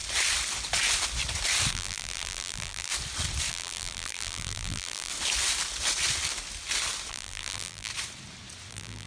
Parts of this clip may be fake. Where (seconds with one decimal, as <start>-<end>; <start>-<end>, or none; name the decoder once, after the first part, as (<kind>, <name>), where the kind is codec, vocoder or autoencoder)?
1.7-2.9 (vocoder, BigVGAN v2); 3.5-5.1; 7.1-7.9; 8.7-9.1